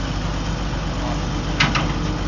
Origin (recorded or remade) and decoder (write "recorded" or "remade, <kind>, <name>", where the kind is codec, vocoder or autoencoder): recorded